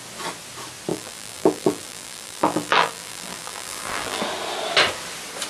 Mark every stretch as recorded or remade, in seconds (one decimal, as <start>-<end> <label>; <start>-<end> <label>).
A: 0.0-0.9 recorded; 0.9-4.2 remade; 4.2-5.5 recorded